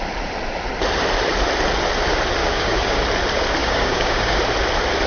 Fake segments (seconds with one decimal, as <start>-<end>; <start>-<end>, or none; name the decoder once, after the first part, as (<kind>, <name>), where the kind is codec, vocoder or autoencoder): 2.4-3.0 (codec, DAC); 3.6-4.4